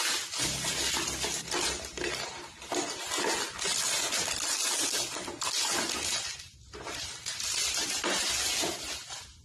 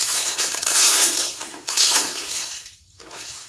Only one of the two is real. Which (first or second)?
first